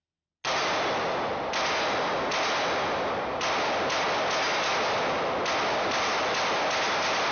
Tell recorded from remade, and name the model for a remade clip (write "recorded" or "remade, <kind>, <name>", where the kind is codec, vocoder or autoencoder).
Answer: recorded